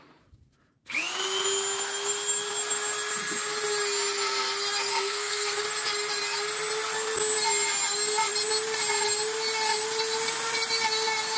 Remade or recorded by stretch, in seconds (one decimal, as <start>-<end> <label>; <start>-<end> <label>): 0.0-4.9 recorded; 4.9-5.6 remade; 5.6-11.4 recorded